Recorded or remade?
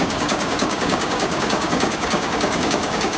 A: remade